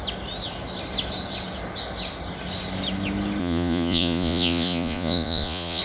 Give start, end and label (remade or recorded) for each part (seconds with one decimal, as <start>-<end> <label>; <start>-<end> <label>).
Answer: 0.0-3.4 recorded; 3.4-5.8 remade